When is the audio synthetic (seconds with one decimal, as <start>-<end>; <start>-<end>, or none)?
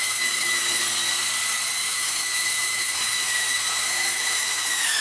0.0-0.8; 1.8-5.0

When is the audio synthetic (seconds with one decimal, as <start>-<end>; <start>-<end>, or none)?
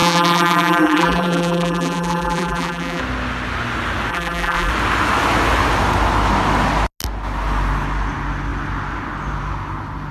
0.0-3.0; 4.1-4.7